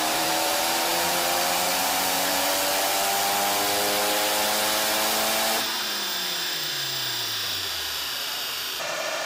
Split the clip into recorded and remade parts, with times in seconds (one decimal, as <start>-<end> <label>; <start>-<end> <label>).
0.0-2.5 remade; 2.5-7.6 recorded; 7.6-9.3 remade